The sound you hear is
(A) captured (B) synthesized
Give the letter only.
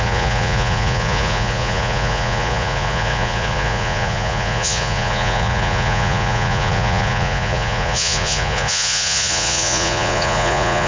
B